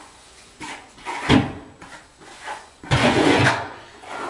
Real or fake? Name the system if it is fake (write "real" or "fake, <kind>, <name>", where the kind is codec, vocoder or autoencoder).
fake, vocoder, Vocos